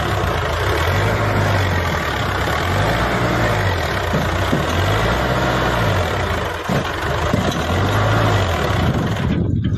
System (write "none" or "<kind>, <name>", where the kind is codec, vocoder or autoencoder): none